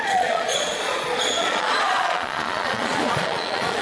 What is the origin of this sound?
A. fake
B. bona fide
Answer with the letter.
A